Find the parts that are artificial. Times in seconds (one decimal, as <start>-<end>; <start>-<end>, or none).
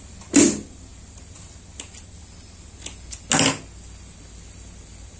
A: none